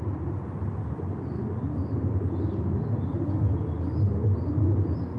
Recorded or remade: recorded